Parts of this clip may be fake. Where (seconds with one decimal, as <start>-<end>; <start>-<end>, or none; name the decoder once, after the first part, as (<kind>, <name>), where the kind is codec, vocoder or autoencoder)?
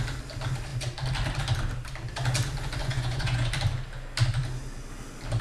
2.8-3.5 (vocoder, Vocos)